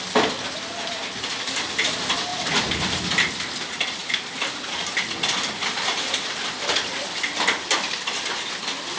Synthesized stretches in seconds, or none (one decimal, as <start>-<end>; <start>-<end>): none